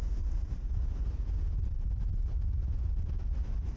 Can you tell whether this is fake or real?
real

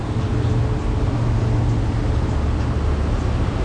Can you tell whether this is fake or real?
real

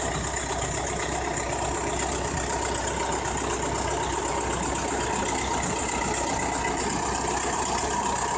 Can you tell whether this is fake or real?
real